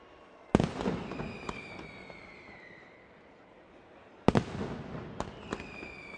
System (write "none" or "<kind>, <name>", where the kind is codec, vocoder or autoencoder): none